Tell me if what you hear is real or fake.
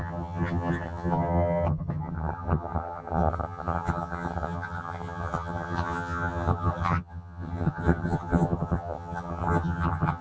fake